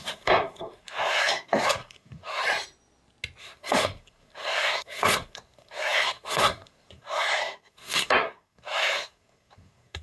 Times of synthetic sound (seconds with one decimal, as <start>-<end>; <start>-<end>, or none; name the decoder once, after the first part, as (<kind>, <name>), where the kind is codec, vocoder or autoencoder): 0.0-2.4 (codec, SNAC); 3.4-10.0